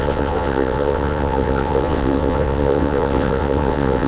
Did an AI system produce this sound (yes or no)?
yes